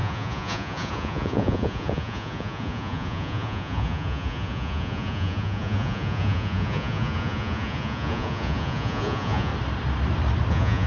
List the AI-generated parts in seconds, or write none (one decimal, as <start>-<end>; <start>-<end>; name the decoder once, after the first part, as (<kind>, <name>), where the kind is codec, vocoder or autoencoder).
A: 0.0-9.5 (vocoder, Vocos); 10.5-10.9